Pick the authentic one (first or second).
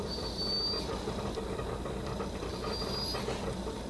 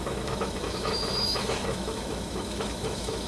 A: first